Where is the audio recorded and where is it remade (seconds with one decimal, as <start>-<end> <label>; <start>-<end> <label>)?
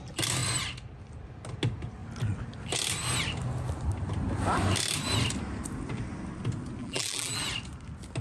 0.0-6.8 recorded; 6.8-7.4 remade; 7.4-8.2 recorded